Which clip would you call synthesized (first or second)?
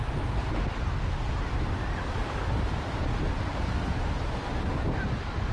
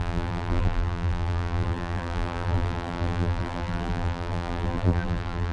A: second